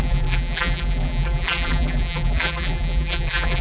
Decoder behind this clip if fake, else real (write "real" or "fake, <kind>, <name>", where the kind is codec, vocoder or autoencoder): fake, vocoder, BigVGAN v2